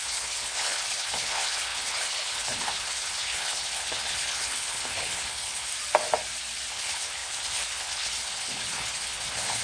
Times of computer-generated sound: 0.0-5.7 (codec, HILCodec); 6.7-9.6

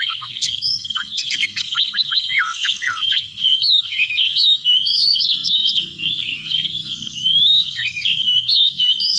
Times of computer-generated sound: 0.0-9.2 (codec, SNAC)

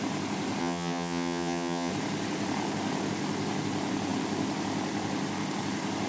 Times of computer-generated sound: 0.6-1.9 (vocoder, HiFi-GAN)

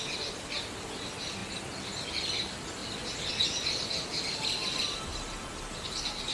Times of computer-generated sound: none

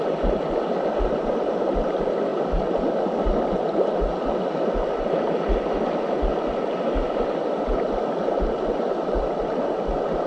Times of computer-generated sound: none

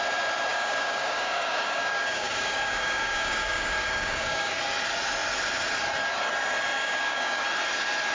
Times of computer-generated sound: 0.5-4.6 (codec, DAC); 6.8-7.4

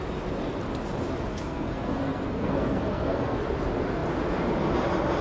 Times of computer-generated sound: 1.3-3.4 (codec, SNAC)